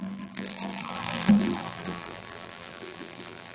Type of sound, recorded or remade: remade